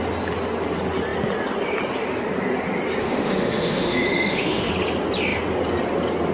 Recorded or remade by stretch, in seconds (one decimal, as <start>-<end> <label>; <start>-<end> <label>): 0.0-3.0 recorded; 3.0-4.7 remade; 4.7-6.3 recorded